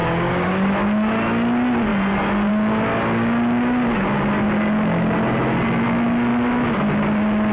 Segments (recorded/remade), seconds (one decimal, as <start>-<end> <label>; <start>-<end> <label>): 0.0-0.7 remade; 0.7-7.5 recorded